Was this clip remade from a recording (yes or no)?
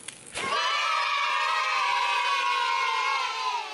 no